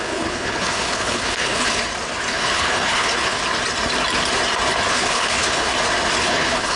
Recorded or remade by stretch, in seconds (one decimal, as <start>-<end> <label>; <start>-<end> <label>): 0.0-1.8 remade; 1.8-2.3 recorded; 2.3-3.4 remade; 3.4-4.9 recorded; 4.9-5.7 remade; 5.7-6.2 recorded; 6.2-6.8 remade